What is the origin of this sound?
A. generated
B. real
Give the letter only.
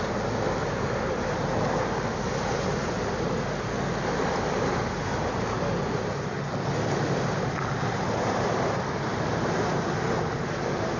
B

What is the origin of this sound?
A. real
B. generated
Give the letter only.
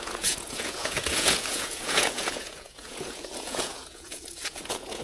B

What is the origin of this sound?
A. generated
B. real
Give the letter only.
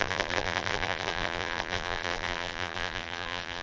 A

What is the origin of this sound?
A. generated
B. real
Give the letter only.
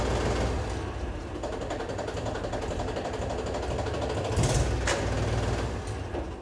B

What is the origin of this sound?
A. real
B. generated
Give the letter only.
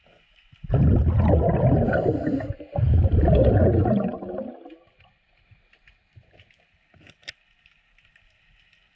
A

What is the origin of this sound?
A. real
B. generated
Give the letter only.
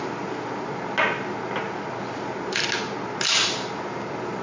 A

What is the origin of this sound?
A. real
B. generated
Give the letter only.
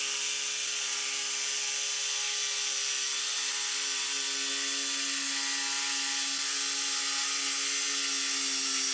A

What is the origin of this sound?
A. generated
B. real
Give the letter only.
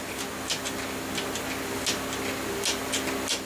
B